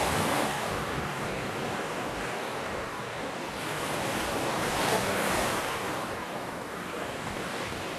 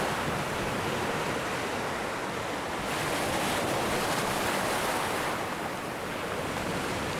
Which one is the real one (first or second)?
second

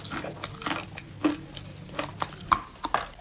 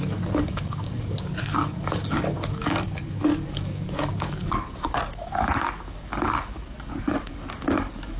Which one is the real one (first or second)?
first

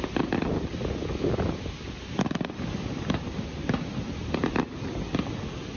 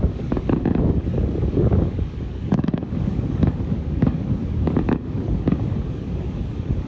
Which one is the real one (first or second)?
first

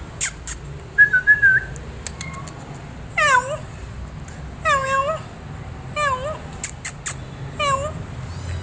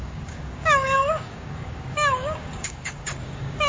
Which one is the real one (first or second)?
first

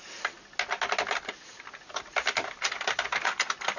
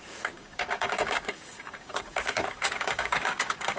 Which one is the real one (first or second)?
first